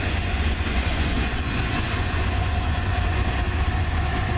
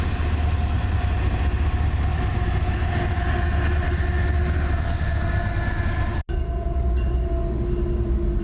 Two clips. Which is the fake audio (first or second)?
first